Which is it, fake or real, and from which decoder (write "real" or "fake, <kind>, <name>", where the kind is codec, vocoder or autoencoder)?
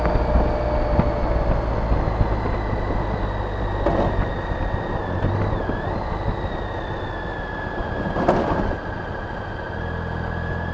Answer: real